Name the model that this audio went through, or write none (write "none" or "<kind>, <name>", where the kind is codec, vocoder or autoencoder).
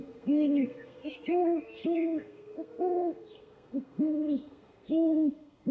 codec, SNAC